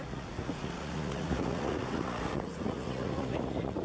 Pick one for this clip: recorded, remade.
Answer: remade